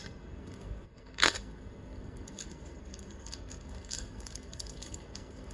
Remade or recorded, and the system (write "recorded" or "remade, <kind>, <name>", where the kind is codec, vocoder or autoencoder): remade, codec, SNAC